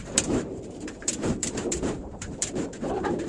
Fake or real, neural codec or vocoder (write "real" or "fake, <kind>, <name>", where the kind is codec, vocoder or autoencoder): fake, vocoder, BigVGAN v2